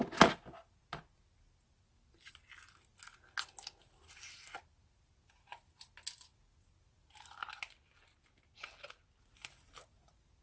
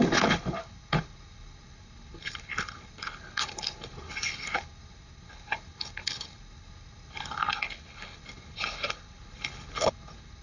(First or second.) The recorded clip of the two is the first